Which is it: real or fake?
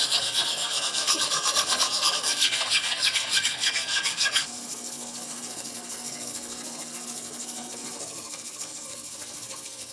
fake